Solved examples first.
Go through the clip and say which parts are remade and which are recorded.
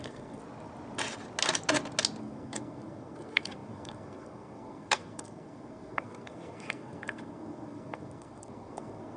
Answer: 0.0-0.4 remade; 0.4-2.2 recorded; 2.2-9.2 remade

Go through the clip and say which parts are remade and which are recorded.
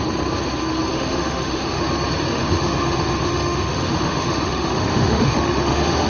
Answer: 0.0-0.9 recorded; 0.9-1.8 remade; 1.8-2.3 recorded; 2.3-6.1 remade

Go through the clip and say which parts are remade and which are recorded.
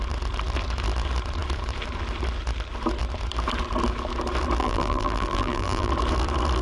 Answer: 0.0-4.6 recorded; 4.6-5.9 remade; 5.9-6.6 recorded